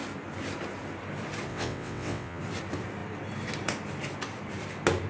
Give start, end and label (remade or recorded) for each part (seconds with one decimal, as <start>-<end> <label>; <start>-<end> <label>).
0.0-1.5 recorded; 1.5-2.4 remade; 2.4-5.1 recorded

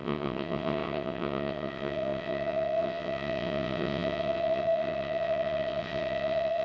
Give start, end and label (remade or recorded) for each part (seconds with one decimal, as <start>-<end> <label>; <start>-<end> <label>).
0.0-6.6 remade

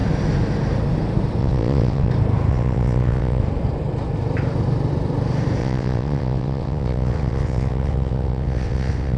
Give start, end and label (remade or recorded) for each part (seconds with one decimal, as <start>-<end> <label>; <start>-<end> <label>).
0.0-1.4 recorded; 1.4-2.1 remade; 2.1-2.5 recorded; 2.5-3.4 remade; 3.4-5.6 recorded; 5.6-9.2 remade

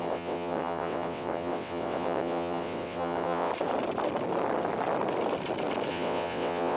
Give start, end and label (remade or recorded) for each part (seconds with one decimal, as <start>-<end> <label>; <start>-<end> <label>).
0.0-3.5 remade; 3.5-5.9 recorded; 5.9-6.8 remade

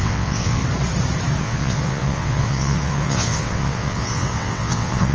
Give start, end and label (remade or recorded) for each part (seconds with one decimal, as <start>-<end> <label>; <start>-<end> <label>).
0.0-0.6 remade; 0.6-1.4 recorded; 1.4-5.1 remade

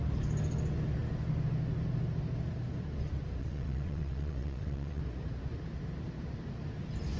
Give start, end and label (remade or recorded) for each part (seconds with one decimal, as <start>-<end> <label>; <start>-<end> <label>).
0.0-3.4 recorded; 3.4-5.0 remade; 5.0-7.2 recorded

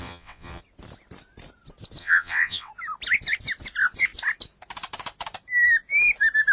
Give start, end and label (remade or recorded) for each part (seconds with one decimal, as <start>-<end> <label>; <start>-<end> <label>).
0.0-0.6 remade; 0.6-2.0 recorded; 2.0-2.7 remade; 2.7-6.5 recorded

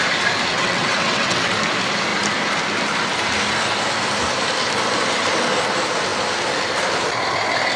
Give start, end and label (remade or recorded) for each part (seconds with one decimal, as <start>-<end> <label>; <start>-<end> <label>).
0.0-0.5 recorded; 0.5-1.5 remade; 1.5-7.8 recorded